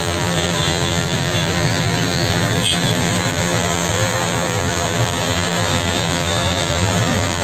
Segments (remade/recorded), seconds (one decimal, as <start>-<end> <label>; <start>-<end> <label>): 0.0-7.4 remade